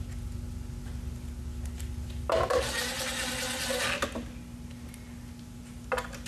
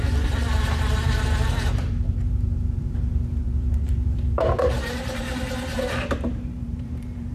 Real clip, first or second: first